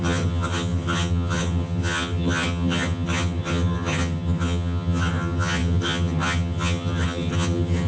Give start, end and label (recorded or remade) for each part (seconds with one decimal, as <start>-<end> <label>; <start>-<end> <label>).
0.0-7.9 remade